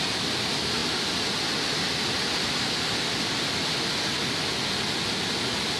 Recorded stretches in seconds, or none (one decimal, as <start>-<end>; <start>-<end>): 0.0-5.8